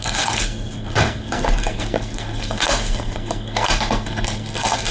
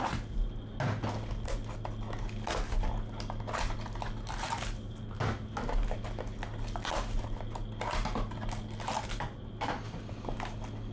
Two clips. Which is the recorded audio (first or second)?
second